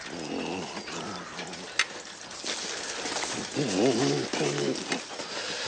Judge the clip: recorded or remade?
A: recorded